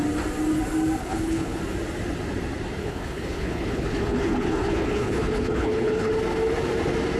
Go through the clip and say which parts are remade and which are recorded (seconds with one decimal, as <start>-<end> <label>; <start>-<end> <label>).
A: 0.0-1.0 recorded; 1.0-1.6 remade; 1.6-2.8 recorded; 2.8-6.1 remade; 6.1-7.2 recorded